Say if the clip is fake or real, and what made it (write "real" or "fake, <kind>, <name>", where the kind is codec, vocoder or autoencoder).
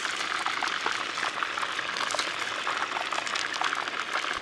real